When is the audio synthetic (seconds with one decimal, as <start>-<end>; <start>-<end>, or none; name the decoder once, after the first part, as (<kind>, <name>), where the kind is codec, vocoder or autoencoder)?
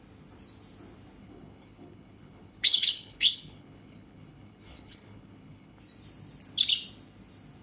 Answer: 1.2-5.8 (codec, HILCodec)